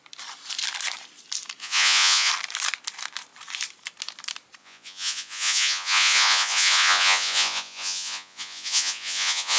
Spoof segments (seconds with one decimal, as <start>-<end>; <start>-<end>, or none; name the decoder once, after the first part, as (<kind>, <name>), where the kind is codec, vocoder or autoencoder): 1.6-2.3 (vocoder, Vocos); 4.6-9.6